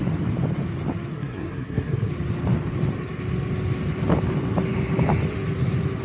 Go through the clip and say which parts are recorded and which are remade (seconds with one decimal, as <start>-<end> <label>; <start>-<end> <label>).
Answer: 0.0-1.1 recorded; 1.1-2.1 remade; 2.1-6.0 recorded